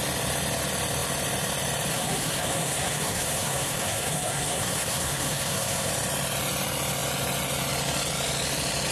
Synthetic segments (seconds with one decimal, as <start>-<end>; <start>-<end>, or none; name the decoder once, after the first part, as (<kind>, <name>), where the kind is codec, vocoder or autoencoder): 1.9-5.9 (codec, SNAC)